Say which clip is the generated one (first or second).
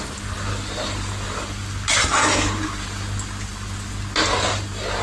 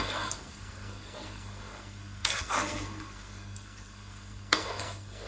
second